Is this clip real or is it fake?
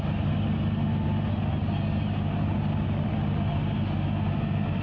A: real